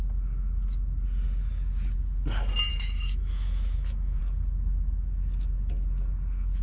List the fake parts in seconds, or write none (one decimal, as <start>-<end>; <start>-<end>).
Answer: 2.7-4.2

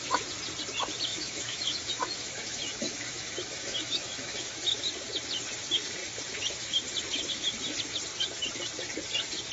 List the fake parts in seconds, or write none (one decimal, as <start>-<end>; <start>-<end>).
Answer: 1.1-4.8